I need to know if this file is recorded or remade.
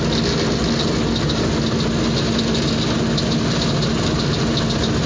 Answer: recorded